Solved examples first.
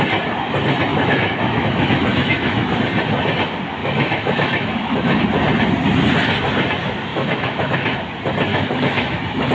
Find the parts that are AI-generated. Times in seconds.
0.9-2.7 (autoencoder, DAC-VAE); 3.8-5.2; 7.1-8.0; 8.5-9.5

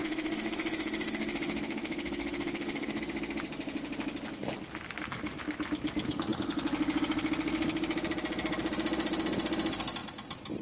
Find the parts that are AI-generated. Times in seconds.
0.0-3.0 (autoencoder, DAC-VAE)